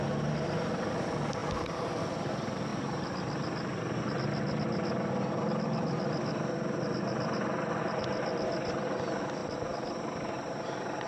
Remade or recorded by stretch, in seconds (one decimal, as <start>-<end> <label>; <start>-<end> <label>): 0.0-11.1 recorded